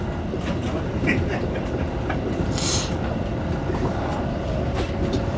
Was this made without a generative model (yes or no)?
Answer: yes